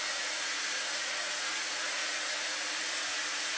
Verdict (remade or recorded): remade